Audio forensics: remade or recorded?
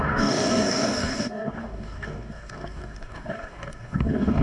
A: remade